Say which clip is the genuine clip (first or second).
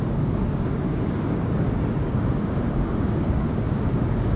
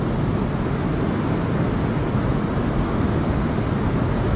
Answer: second